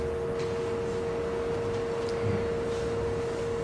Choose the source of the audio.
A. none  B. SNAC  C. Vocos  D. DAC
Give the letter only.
A